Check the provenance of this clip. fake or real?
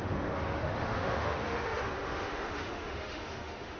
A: fake